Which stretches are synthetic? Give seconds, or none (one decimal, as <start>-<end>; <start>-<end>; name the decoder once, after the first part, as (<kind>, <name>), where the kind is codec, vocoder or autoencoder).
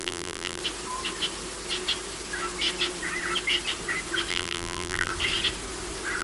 0.0-0.6 (vocoder, BigVGAN v2); 4.3-5.1